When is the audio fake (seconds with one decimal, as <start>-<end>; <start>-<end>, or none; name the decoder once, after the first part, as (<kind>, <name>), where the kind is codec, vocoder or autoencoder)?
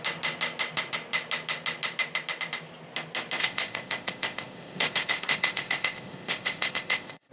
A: 3.4-7.3 (codec, ZipCodec)